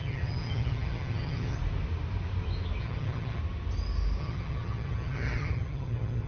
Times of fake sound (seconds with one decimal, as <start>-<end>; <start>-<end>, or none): 0.0-1.6; 2.8-3.4; 4.2-6.3